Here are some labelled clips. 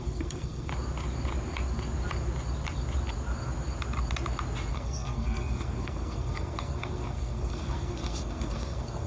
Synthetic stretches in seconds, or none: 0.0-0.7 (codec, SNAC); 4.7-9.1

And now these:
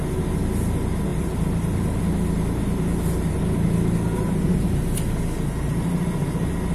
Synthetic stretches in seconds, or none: 1.1-2.0 (vocoder, BigVGAN v2)

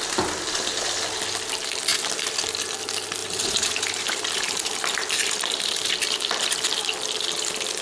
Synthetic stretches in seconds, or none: 1.9-2.5 (vocoder, BigVGAN v2); 3.2-5.9

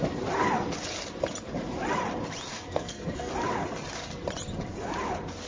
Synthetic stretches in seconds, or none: 2.5-3.3 (codec, SNAC)

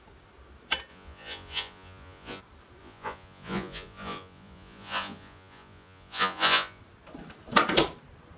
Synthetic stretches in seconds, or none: 0.9-2.4 (vocoder, Vocos); 2.8-6.8

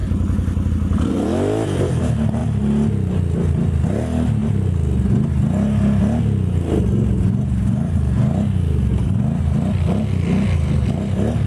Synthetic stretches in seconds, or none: none

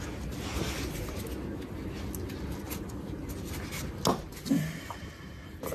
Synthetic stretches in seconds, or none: none